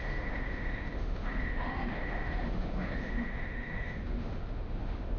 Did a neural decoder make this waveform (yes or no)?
yes